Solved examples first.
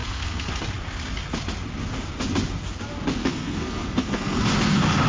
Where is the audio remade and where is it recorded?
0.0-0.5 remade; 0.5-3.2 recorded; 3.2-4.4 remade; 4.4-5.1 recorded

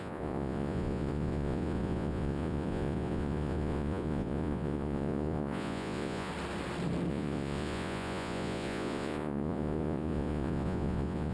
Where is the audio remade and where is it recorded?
0.0-6.3 remade; 6.3-7.1 recorded; 7.1-11.3 remade

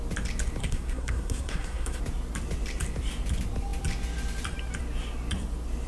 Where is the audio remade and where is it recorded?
0.0-0.6 recorded; 0.6-2.0 remade; 2.0-5.9 recorded